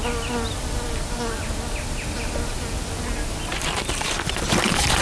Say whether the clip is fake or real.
real